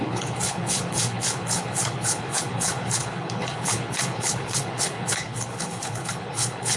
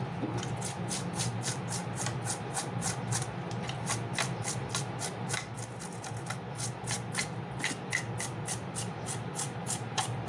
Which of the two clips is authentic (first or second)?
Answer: second